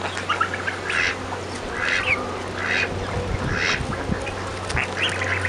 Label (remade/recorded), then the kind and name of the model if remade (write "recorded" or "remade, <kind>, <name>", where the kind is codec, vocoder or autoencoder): recorded